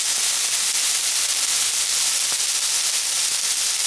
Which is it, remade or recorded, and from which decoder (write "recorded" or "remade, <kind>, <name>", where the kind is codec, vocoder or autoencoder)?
recorded